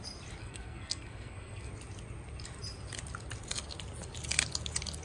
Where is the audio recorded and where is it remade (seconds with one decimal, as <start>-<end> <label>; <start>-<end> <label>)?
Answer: 0.0-0.4 recorded; 0.4-1.7 remade; 1.7-5.0 recorded